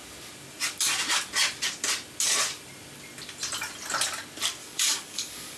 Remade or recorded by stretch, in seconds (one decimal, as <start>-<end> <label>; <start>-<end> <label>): 0.0-4.6 recorded; 4.6-5.6 remade